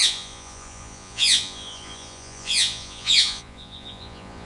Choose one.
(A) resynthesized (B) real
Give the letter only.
A